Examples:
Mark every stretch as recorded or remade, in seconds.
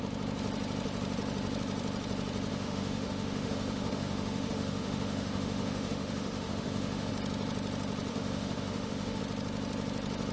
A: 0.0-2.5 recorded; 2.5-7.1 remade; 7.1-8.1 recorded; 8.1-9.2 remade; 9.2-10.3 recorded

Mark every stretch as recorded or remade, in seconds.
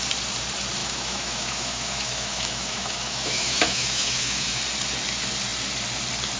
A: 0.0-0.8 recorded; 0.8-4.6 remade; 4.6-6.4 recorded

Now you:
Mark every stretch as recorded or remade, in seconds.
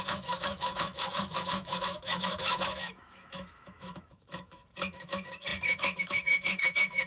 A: 0.0-7.1 remade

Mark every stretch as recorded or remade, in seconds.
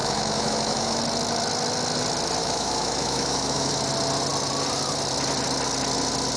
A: 0.0-1.0 remade; 1.0-2.4 recorded; 2.4-3.7 remade; 3.7-6.4 recorded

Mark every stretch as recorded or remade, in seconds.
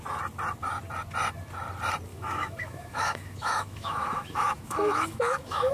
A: 0.0-2.1 recorded; 2.1-5.7 remade